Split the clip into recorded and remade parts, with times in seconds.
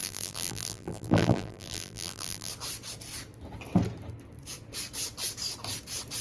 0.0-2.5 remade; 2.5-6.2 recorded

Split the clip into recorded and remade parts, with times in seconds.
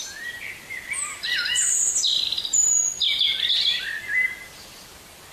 0.0-2.6 remade; 2.6-3.5 recorded; 3.5-5.3 remade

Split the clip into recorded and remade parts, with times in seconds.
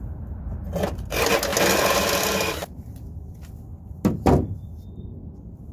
0.0-1.5 recorded; 1.5-3.0 remade; 3.0-5.7 recorded